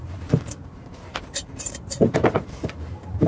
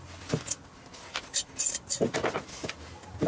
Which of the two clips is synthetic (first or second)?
first